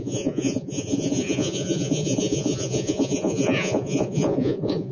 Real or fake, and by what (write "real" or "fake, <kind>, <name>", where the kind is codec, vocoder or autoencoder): fake, vocoder, Vocos